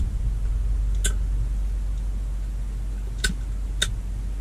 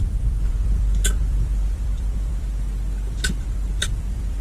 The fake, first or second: second